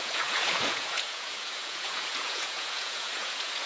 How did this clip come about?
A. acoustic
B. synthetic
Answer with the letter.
B